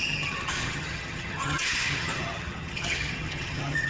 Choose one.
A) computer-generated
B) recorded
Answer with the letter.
A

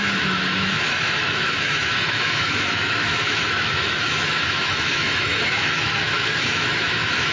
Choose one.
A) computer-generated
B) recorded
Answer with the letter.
A